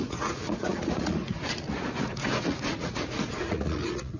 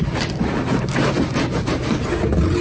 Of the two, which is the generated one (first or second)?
first